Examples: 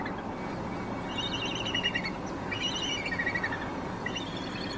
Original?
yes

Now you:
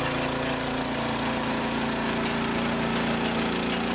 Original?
yes